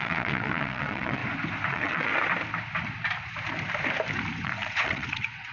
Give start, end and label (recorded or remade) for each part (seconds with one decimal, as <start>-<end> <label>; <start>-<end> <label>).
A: 0.0-1.2 remade; 1.2-1.7 recorded; 1.7-2.1 remade; 2.1-4.4 recorded; 4.4-5.5 remade